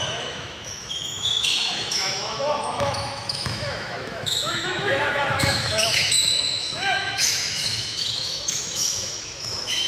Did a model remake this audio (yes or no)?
yes